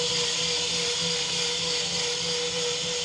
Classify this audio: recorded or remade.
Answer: recorded